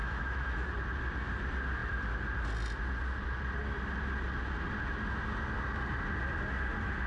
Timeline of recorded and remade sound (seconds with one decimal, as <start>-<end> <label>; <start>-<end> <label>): 0.0-0.7 remade; 0.7-7.1 recorded